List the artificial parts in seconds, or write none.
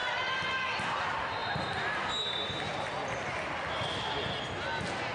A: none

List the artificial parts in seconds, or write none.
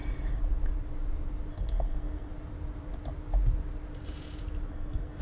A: 1.5-2.3 (codec, SNAC); 4.7-5.2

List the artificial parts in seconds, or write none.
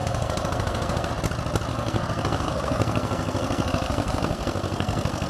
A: 0.0-1.1 (codec, SNAC); 1.7-5.3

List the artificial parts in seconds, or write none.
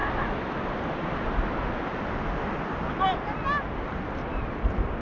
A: none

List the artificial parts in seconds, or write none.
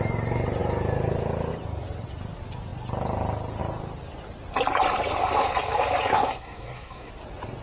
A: 6.1-7.1 (codec, SNAC)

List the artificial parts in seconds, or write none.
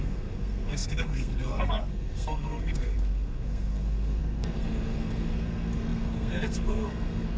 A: 0.0-7.4 (codec, SNAC)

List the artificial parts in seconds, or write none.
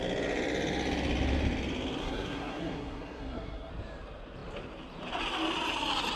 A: 2.0-3.7 (codec, SNAC)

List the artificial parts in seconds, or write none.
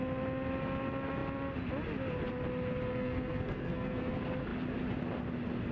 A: 2.9-4.1 (codec, SNAC)